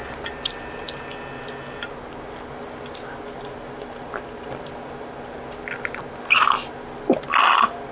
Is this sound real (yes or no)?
yes